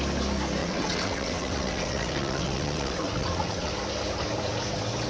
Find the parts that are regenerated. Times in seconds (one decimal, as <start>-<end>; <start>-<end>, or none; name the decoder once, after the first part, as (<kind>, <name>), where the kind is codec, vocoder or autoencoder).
0.6-3.7 (vocoder, WaveNeXt)